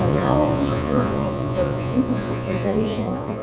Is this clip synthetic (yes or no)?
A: yes